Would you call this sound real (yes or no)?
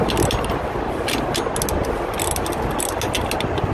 yes